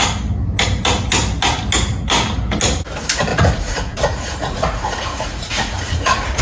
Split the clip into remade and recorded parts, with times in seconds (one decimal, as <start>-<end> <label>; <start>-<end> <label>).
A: 0.0-3.3 recorded; 3.3-6.4 remade